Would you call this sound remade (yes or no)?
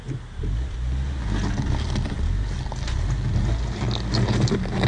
no